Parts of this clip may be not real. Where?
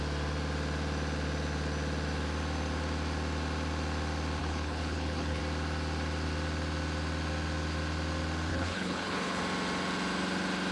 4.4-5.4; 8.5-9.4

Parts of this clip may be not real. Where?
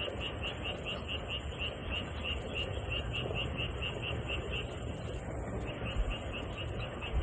1.8-5.7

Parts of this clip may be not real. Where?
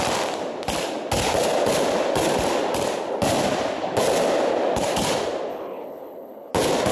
5.5-6.5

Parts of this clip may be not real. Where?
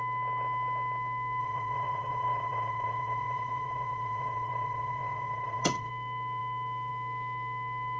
1.4-5.9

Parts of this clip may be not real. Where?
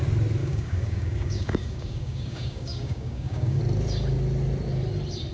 0.4-3.6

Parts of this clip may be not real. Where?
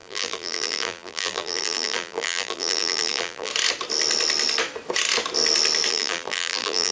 0.0-3.5; 5.9-6.9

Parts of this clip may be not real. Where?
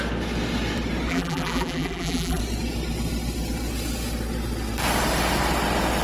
1.1-2.4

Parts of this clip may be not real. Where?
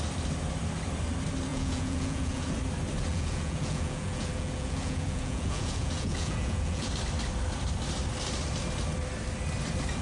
1.5-2.5; 3.1-6.9